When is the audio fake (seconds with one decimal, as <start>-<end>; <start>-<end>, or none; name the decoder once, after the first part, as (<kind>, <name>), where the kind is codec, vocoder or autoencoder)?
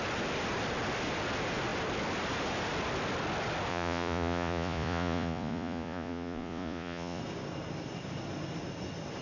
3.7-7.2 (vocoder, Vocos)